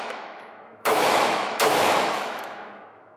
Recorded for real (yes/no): no